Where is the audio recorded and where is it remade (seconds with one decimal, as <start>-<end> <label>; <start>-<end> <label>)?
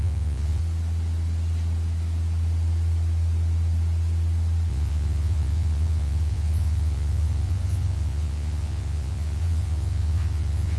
0.0-0.6 remade; 0.6-4.7 recorded; 4.7-10.8 remade